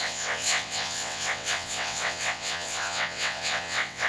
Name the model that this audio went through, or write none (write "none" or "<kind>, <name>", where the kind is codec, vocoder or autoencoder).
vocoder, WaveNeXt